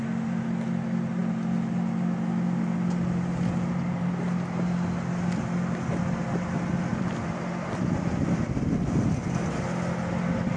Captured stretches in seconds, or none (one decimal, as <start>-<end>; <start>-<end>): 0.0-6.9; 9.1-10.6